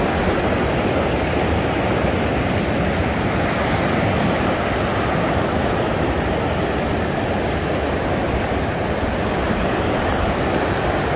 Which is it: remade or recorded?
recorded